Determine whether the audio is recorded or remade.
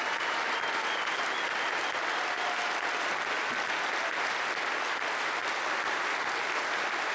recorded